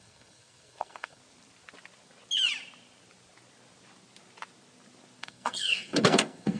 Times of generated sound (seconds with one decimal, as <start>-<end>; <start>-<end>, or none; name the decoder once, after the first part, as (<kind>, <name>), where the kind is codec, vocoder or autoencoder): 0.0-1.2 (codec, SNAC); 5.2-6.6